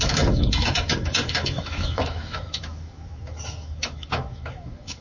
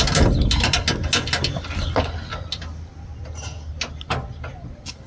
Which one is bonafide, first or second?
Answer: second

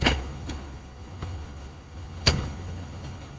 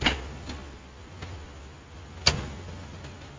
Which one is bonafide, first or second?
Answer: second